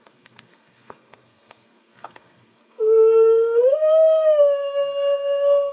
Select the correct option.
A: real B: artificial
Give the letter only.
B